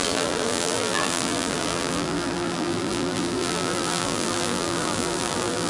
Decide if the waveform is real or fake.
fake